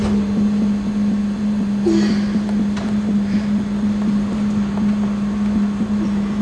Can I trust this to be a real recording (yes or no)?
yes